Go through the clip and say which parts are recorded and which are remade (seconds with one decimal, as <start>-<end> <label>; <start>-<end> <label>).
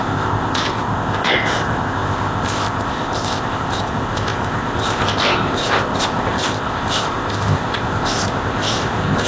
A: 0.0-9.3 remade